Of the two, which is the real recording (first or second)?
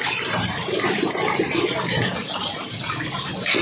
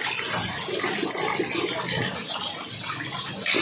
second